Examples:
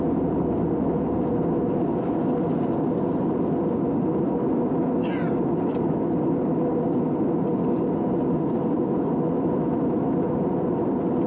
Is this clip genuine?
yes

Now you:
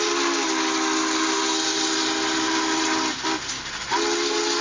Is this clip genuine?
yes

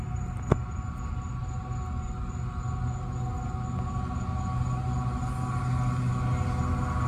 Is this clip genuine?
yes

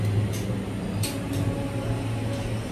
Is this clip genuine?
yes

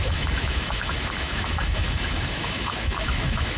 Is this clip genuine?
no